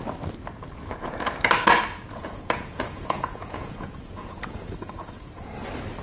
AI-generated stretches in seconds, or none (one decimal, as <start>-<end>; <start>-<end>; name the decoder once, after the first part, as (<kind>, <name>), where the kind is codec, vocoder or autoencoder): 1.9-5.3 (vocoder, Vocos)